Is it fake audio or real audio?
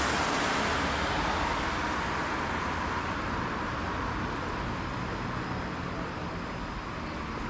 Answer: real